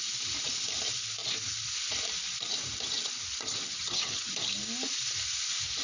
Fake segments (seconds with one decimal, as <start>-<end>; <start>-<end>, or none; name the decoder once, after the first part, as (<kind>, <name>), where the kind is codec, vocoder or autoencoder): 3.7-4.3 (vocoder, HiFi-GAN)